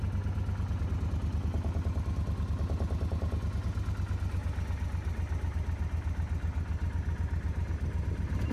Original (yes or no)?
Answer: yes